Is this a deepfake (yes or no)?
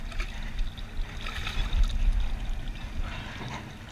no